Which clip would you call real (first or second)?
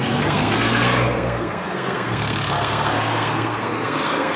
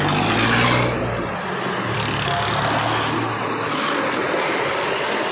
second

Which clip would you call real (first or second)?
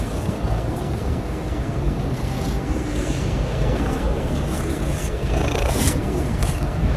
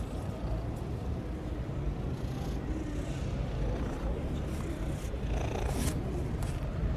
second